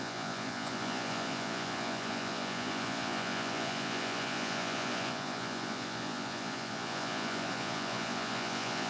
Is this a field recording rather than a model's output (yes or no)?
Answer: no